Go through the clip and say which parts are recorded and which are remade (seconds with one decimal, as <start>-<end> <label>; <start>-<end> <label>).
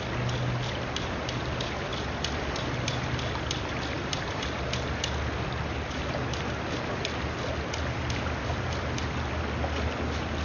0.0-1.9 recorded; 1.9-4.4 remade; 4.4-10.4 recorded